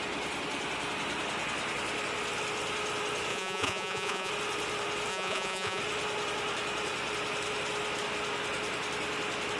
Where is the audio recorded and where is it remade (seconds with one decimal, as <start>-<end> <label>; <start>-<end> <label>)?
0.0-3.3 recorded; 3.3-4.3 remade; 4.3-5.1 recorded; 5.1-5.8 remade; 5.8-9.6 recorded